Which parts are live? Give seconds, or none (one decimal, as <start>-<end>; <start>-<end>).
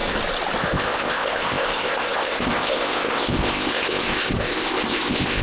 0.0-0.6